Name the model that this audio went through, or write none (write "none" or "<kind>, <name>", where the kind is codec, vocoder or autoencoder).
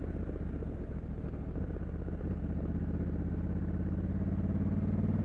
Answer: none